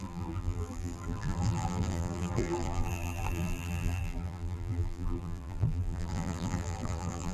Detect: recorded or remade remade